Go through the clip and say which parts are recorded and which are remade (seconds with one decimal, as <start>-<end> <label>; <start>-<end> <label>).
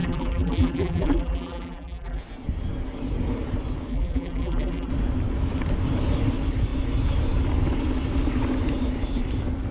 0.0-2.2 remade; 2.2-3.9 recorded; 3.9-4.9 remade; 4.9-9.7 recorded